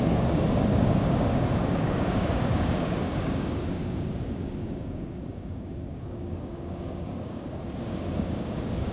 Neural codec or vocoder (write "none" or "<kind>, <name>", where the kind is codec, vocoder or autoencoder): codec, DAC